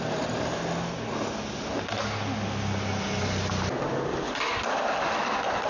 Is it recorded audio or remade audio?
recorded